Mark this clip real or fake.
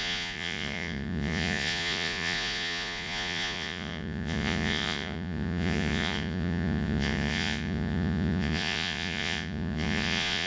fake